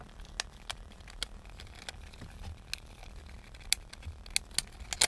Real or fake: real